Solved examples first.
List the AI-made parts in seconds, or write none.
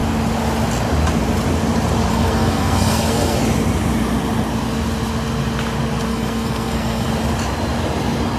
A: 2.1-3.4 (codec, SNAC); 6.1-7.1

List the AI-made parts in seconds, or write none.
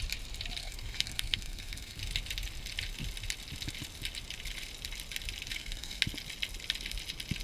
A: 0.6-2.0 (codec, SNAC); 5.5-6.0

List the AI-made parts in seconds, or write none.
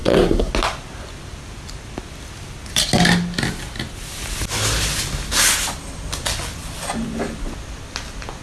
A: 0.0-0.5 (codec, SNAC)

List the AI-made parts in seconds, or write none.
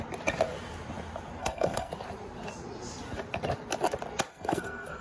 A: 1.4-1.9 (codec, SNAC); 4.3-5.0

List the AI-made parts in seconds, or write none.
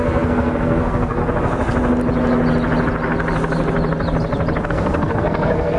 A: 0.0-1.2 (codec, SNAC); 4.7-5.8